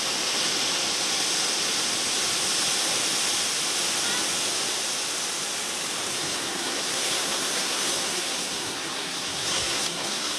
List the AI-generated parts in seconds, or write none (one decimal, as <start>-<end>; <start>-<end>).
6.1-10.4